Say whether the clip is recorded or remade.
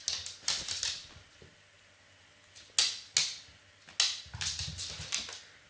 recorded